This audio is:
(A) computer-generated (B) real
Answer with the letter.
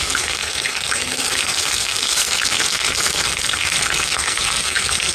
A